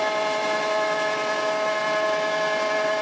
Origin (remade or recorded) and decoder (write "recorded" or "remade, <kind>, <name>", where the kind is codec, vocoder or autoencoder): recorded